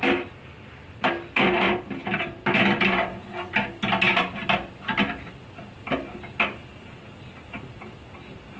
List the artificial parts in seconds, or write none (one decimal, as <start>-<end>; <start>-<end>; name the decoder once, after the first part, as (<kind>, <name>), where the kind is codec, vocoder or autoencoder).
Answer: none